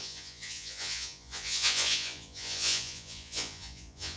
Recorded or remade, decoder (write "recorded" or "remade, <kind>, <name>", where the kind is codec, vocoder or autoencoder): remade, vocoder, Vocos